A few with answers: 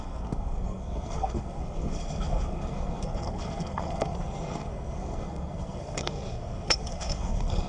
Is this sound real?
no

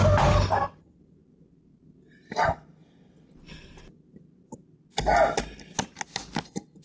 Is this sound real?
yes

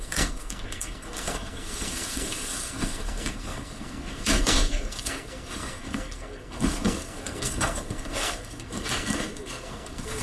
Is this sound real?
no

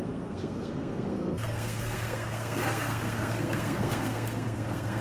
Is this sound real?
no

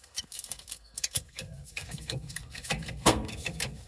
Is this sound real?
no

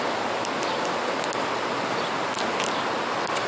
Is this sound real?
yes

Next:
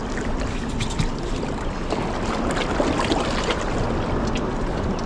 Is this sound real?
yes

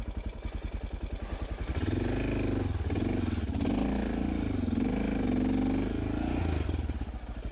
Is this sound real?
yes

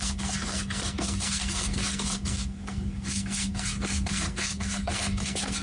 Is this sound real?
no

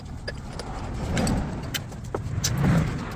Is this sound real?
yes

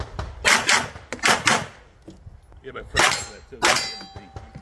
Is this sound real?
yes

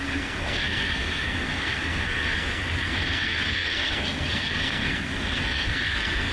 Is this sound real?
no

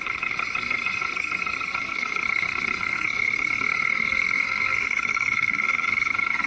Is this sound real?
no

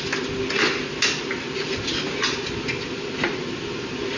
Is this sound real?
yes